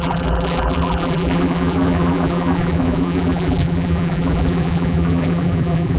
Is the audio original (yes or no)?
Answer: no